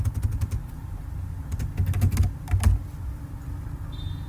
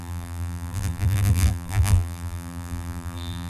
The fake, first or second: second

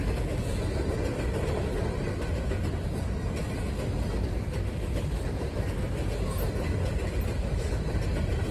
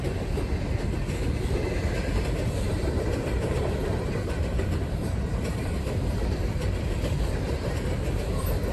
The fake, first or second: second